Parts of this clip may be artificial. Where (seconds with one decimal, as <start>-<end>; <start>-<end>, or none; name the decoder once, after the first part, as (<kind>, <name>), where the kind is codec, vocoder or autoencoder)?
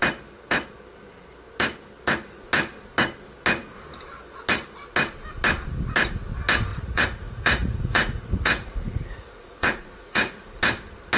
6.7-10.6 (vocoder, Vocos)